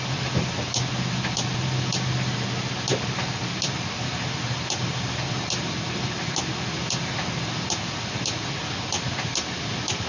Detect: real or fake real